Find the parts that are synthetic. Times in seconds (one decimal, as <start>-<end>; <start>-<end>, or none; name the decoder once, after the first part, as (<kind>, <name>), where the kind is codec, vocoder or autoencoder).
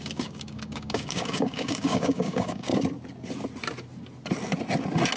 0.0-2.7 (codec, DAC)